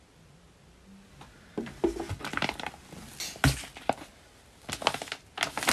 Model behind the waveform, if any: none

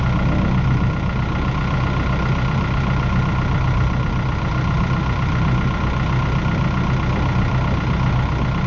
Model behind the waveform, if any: none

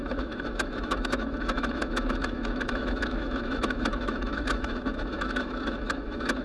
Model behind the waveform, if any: autoencoder, DAC-VAE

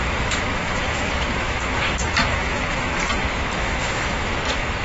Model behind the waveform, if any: autoencoder, DAC-VAE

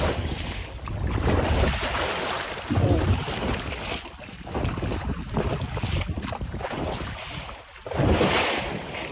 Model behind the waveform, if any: none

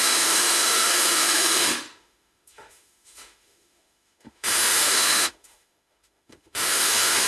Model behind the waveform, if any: autoencoder, DAC-VAE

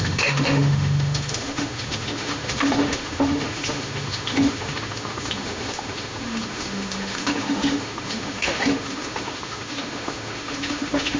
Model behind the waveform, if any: autoencoder, DAC-VAE